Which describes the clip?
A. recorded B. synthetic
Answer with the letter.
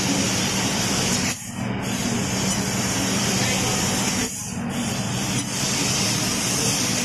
A